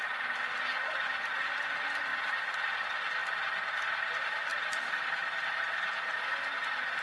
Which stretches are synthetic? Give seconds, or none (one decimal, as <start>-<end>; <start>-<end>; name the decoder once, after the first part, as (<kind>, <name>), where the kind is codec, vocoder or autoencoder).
none